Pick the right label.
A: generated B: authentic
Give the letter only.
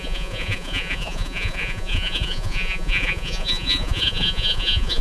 A